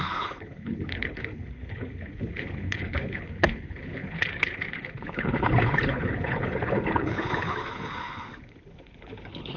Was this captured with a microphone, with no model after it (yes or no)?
no